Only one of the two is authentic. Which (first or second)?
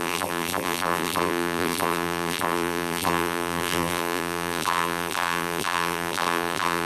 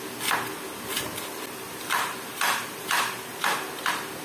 second